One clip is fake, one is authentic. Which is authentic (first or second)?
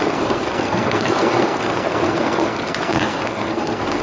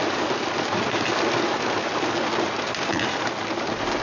second